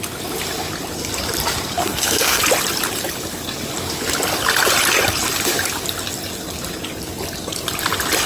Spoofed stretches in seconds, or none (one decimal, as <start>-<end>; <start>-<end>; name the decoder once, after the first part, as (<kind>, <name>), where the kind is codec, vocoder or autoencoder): 1.8-2.4 (codec, SNAC)